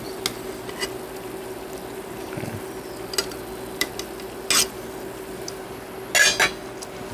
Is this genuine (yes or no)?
yes